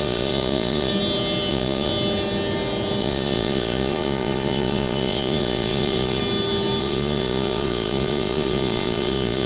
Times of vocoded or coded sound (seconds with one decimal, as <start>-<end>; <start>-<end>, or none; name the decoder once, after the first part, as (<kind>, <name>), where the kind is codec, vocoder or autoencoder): 0.0-0.9 (vocoder, Vocos); 1.5-1.9; 3.0-6.2; 6.8-9.5